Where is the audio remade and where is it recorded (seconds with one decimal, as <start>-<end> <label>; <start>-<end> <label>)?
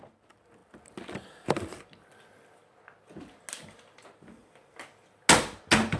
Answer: 0.0-6.0 recorded